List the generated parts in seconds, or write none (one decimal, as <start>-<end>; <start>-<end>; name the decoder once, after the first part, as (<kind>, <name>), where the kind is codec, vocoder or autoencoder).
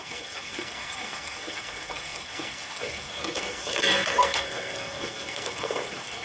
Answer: 0.0-6.2 (codec, SNAC)